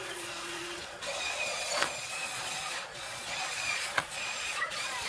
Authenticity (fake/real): fake